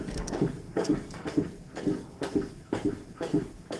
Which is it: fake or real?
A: fake